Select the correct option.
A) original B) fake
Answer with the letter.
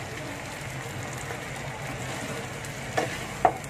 A